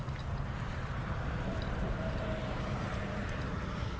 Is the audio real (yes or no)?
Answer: no